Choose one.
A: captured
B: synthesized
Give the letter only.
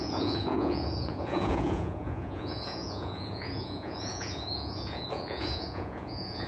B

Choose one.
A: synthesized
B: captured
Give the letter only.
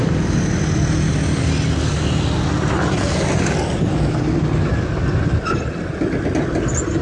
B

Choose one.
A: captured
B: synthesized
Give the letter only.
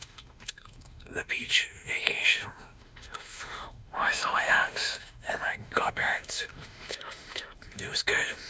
B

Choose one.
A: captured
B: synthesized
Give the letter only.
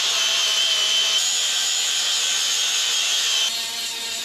B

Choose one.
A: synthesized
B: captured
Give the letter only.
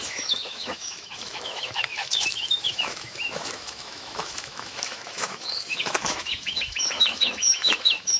A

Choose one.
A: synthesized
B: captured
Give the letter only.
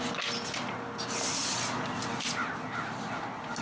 B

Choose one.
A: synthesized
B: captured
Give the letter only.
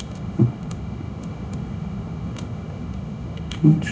A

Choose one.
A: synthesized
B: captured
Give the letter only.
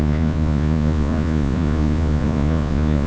A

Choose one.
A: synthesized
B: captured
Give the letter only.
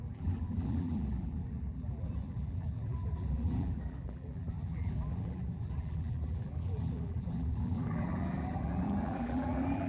A